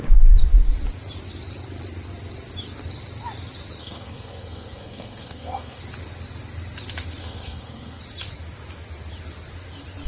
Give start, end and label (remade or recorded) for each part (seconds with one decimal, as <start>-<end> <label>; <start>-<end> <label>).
0.0-3.8 recorded; 3.8-5.8 remade; 5.8-7.2 recorded; 7.2-8.0 remade; 8.0-10.1 recorded